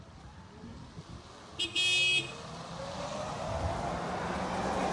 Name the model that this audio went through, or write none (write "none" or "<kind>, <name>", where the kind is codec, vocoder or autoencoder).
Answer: none